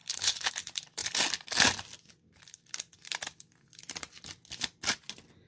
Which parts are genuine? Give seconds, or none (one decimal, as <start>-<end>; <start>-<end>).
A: 0.5-5.5